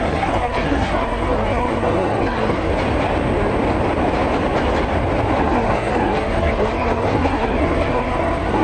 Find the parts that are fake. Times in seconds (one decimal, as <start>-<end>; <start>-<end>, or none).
0.0-2.7; 5.4-8.6